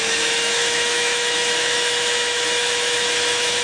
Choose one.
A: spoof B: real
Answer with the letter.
A